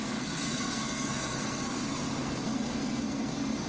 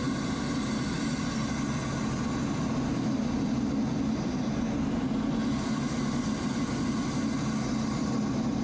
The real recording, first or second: second